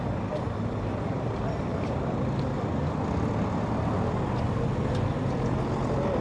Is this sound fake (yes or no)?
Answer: no